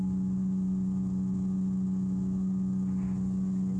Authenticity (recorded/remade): recorded